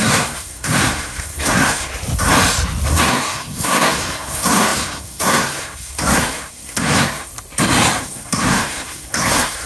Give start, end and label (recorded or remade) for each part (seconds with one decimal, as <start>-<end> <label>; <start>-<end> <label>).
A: 0.0-1.9 remade; 1.9-2.9 recorded; 2.9-7.3 remade; 7.3-8.0 recorded; 8.0-9.7 remade